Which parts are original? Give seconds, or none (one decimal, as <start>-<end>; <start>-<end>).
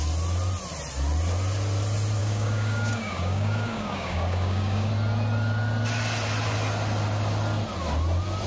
0.0-2.2; 4.9-8.5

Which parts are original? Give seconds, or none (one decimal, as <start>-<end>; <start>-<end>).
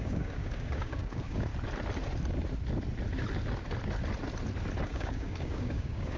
1.5-4.8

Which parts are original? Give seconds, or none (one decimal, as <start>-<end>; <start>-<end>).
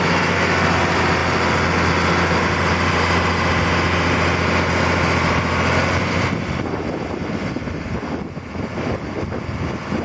0.0-10.0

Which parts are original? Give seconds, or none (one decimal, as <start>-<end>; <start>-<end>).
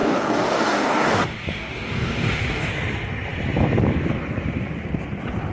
2.7-5.5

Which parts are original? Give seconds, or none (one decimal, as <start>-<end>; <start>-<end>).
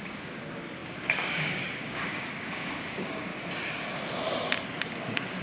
3.3-5.0